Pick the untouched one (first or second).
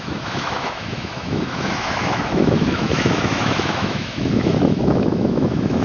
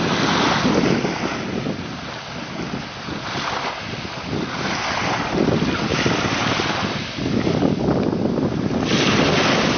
second